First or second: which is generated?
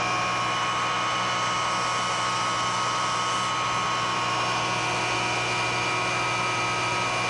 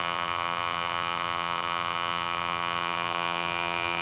second